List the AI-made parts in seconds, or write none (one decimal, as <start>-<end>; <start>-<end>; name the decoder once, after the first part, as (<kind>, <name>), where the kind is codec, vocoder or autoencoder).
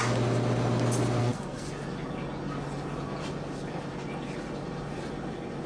1.2-1.7 (codec, SNAC)